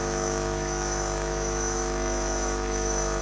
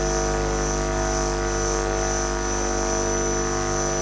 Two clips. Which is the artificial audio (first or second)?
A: first